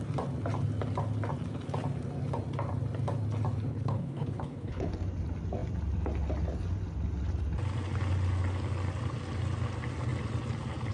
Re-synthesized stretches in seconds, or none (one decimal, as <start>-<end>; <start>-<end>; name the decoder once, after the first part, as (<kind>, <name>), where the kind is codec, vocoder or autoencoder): 3.7-4.9 (codec, HILCodec)